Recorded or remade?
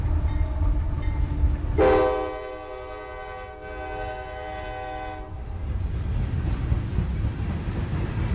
recorded